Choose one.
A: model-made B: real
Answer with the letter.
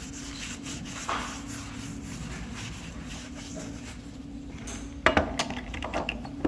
B